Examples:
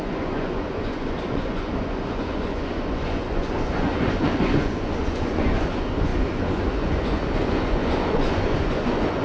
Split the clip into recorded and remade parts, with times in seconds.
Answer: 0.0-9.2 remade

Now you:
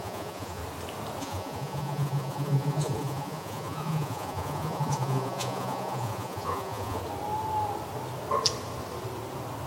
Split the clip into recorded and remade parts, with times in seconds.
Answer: 0.0-0.6 remade; 0.6-1.2 recorded; 1.2-7.0 remade; 7.0-9.7 recorded

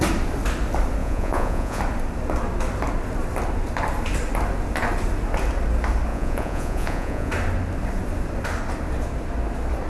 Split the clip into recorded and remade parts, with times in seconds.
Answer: 0.0-1.0 recorded; 1.0-1.8 remade; 1.8-6.1 recorded; 6.1-7.3 remade; 7.3-9.9 recorded

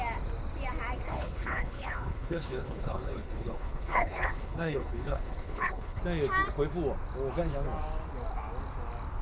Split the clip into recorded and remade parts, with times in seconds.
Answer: 0.0-1.1 recorded; 1.1-6.0 remade; 6.0-9.2 recorded

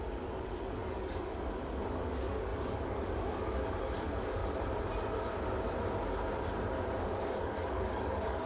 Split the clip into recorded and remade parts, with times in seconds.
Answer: 0.0-4.4 remade; 4.4-7.0 recorded; 7.0-8.5 remade